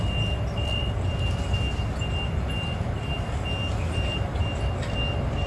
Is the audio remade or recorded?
recorded